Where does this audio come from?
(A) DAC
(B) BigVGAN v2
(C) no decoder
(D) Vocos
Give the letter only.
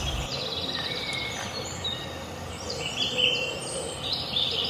B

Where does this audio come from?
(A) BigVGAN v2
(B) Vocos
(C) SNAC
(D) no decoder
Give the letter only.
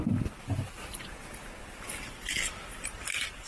D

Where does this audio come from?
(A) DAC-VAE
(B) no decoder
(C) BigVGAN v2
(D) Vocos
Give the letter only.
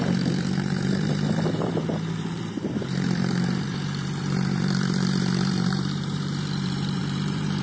C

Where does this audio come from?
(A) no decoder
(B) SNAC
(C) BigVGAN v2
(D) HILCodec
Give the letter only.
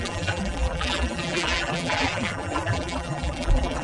C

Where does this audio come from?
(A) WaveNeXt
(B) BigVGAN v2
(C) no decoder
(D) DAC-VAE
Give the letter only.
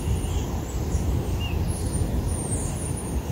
C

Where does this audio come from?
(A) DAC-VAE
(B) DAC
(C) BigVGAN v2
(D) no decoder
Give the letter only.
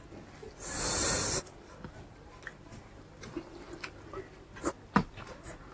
D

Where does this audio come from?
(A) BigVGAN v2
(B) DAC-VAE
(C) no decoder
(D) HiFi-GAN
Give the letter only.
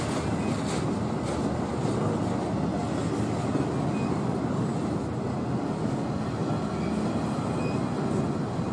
C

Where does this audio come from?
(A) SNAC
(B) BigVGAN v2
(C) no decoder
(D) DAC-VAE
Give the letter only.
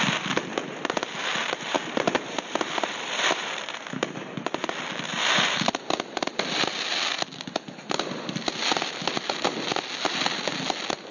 C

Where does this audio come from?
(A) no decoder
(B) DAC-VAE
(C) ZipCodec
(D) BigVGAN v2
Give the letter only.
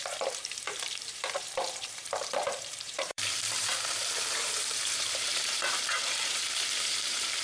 D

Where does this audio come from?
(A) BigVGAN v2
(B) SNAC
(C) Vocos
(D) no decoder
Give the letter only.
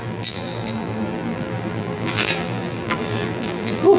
A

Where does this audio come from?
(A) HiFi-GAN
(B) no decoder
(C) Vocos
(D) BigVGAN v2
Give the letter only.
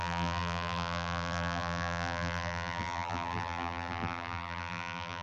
D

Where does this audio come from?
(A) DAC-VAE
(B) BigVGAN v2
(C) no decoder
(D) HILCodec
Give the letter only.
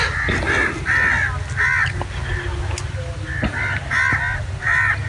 C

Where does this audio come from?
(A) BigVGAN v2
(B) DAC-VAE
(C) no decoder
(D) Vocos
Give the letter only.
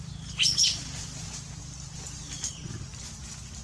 C